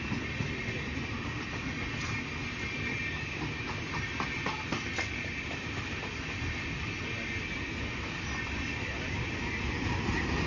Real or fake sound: real